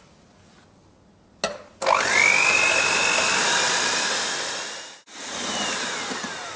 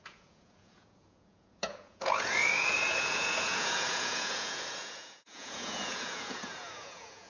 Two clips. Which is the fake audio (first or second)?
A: second